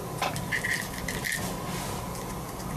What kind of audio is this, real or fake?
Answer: real